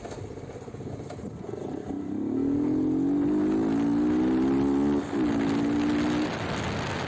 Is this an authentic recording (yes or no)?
yes